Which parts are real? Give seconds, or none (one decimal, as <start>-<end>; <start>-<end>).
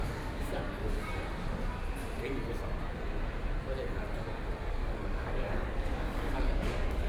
1.1-4.7